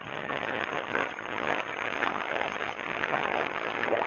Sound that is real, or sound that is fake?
fake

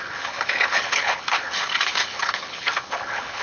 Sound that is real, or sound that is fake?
fake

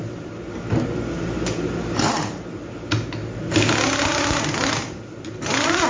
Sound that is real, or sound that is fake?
real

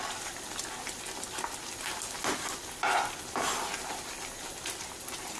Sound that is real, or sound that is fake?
real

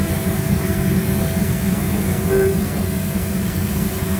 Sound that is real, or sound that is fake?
fake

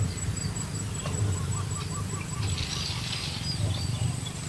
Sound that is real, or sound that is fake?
real